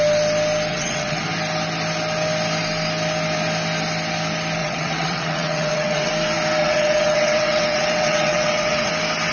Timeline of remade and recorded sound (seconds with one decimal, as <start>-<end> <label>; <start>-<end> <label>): 0.0-0.7 recorded; 0.7-1.2 remade; 1.2-4.6 recorded; 4.6-6.1 remade; 6.1-6.6 recorded; 6.6-8.9 remade; 8.9-9.3 recorded